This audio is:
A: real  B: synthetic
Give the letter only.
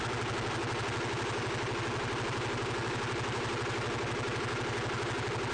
A